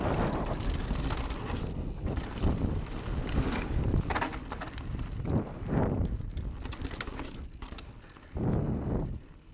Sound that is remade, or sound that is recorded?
recorded